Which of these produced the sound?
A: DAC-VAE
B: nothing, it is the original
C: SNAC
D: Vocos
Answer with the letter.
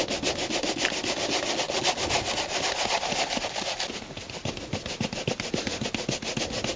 B